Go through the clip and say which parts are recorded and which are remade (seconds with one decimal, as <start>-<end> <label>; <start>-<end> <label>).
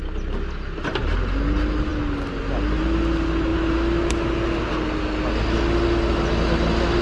0.0-7.0 recorded